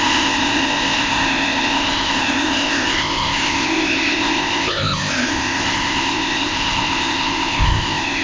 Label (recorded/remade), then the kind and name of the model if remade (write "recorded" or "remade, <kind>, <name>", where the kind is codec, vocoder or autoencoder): remade, codec, ZipCodec